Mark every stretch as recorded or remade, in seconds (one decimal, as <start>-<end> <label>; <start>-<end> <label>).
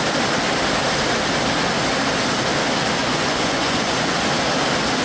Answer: 0.0-3.0 recorded; 3.0-4.2 remade; 4.2-5.0 recorded